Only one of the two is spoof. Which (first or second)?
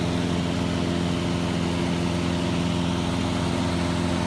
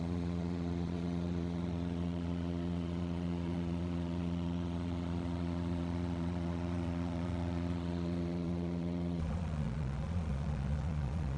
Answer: second